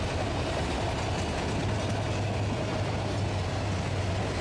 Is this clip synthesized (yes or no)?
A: no